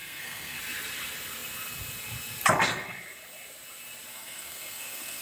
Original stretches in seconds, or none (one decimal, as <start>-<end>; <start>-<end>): 0.6-4.1